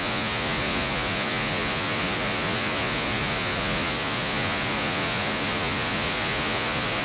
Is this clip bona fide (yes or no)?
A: no